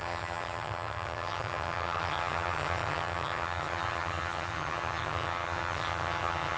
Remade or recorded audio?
remade